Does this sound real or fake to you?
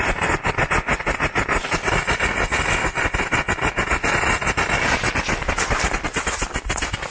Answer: real